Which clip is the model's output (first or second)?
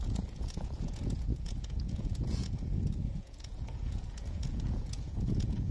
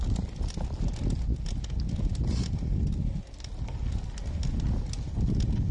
first